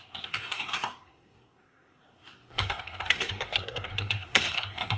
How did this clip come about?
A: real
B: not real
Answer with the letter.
B